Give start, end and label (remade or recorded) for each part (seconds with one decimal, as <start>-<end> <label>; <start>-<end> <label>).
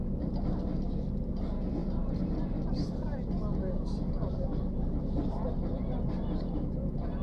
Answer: 0.0-1.8 recorded; 1.8-6.1 remade; 6.1-7.2 recorded